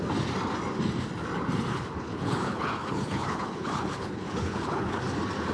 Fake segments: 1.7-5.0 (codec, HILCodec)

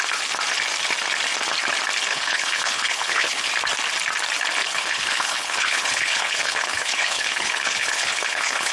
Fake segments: 2.1-3.5 (codec, HILCodec); 4.6-8.7

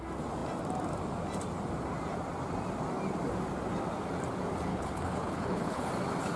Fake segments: 4.7-5.9 (codec, HILCodec)

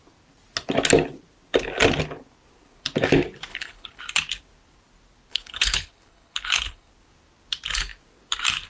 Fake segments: 3.5-4.0 (codec, HILCodec); 5.3-6.9

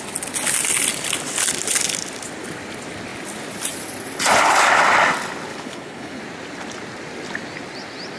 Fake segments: 5.5-6.2 (codec, HILCodec)

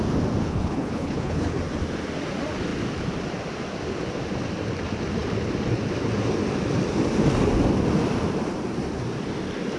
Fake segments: 0.4-1.6 (codec, HILCodec)

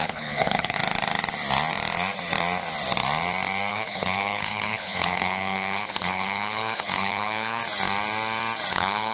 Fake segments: 0.0-0.8 (codec, HILCodec); 3.7-7.6; 8.7-9.1